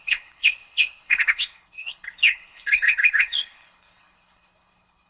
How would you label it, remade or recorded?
remade